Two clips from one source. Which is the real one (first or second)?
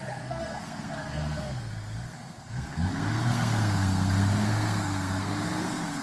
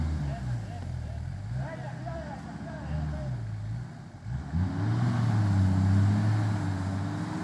second